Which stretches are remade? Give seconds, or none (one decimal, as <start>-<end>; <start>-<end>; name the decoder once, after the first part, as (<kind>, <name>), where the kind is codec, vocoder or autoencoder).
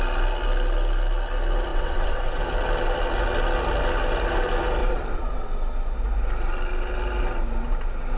1.7-2.4 (vocoder, WaveNeXt); 4.8-5.5